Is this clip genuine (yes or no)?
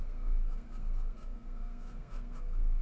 no